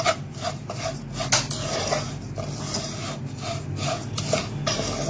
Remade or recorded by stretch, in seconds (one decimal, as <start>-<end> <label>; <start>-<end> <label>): 0.0-5.1 recorded